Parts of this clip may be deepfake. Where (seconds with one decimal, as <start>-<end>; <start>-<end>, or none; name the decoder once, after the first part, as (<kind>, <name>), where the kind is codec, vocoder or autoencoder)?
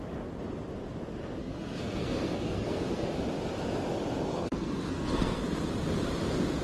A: 1.4-3.1 (codec, SNAC); 4.3-5.4